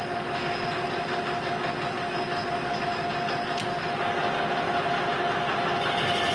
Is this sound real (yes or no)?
yes